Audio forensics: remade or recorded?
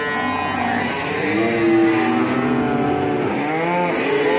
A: recorded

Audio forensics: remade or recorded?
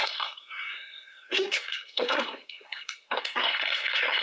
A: remade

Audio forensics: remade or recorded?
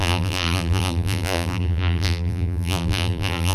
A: remade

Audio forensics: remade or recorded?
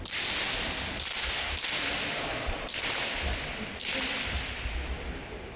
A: recorded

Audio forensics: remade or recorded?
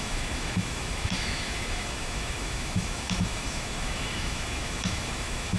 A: remade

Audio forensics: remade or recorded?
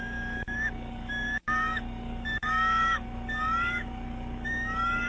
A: remade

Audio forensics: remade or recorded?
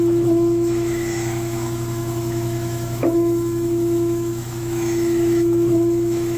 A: remade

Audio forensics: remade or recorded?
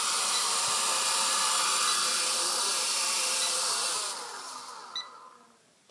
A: recorded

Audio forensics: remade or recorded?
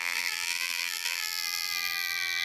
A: remade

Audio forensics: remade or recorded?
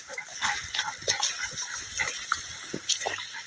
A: recorded